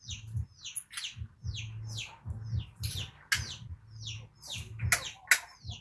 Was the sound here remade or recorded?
recorded